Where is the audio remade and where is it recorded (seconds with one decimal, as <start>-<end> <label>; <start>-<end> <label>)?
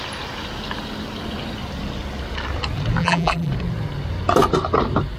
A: 0.0-3.0 recorded; 3.0-3.5 remade; 3.5-5.2 recorded